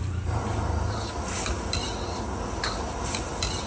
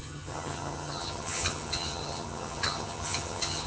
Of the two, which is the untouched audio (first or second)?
first